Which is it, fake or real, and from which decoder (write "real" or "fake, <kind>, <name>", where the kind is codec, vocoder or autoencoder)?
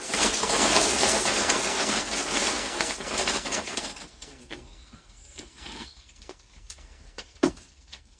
fake, codec, SNAC